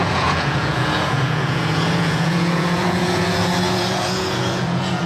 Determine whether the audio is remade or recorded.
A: remade